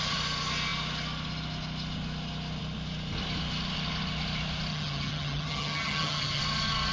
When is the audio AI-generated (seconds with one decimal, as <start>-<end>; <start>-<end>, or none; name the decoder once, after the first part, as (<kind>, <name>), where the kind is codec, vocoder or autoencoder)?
4.7-6.4 (vocoder, HiFi-GAN)